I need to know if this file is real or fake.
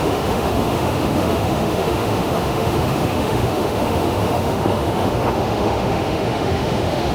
fake